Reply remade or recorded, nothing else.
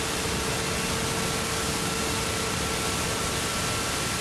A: recorded